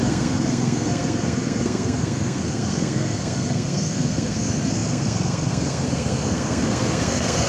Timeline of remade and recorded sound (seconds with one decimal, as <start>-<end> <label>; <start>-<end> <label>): 0.0-7.5 remade

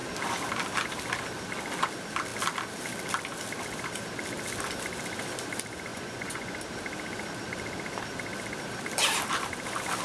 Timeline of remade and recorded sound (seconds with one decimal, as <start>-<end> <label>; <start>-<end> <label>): 0.0-5.9 recorded; 5.9-6.6 remade; 6.6-10.0 recorded

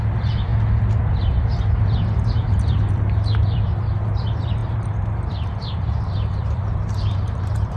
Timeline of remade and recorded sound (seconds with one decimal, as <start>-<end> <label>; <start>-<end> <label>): 0.0-0.5 remade; 0.5-1.1 recorded; 1.1-7.8 remade

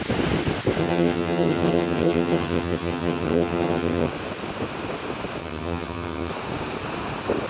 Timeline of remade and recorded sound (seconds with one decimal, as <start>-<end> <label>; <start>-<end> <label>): 0.0-0.8 recorded; 0.8-4.1 remade; 4.1-5.4 recorded; 5.4-6.3 remade; 6.3-7.5 recorded

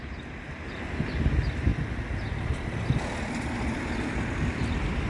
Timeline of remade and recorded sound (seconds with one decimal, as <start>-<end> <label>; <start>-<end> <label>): 0.0-5.1 recorded

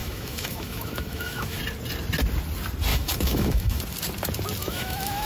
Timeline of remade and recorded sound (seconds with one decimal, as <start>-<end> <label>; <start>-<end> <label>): 0.0-1.6 remade; 1.6-2.9 recorded; 2.9-3.8 remade; 3.8-4.6 recorded; 4.6-5.3 remade

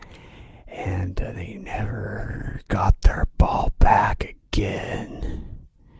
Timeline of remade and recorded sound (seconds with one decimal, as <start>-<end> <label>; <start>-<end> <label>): 0.0-6.0 recorded

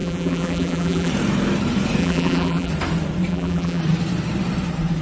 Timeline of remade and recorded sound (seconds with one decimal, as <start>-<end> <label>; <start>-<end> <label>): 0.0-1.1 remade; 1.1-2.0 recorded; 2.0-2.7 remade; 2.7-3.3 recorded; 3.3-3.8 remade; 3.8-5.0 recorded